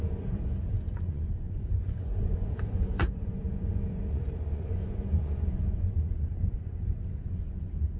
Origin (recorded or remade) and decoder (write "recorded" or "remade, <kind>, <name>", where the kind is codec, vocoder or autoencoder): remade, vocoder, Vocos